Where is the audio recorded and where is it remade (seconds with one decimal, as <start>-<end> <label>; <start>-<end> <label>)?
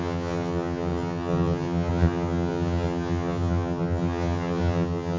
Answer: 0.0-5.2 remade